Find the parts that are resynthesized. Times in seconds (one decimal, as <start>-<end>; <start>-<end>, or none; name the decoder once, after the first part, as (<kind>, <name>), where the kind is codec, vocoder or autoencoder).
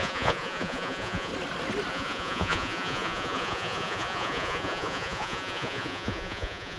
0.0-1.3 (vocoder, Vocos); 1.9-6.8